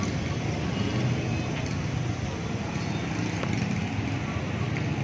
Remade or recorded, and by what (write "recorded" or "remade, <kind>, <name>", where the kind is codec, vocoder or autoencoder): recorded